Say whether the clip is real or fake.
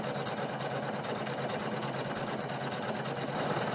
real